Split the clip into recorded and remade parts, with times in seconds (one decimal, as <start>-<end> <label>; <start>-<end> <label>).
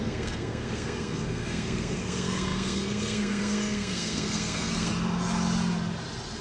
0.0-4.9 remade; 4.9-6.4 recorded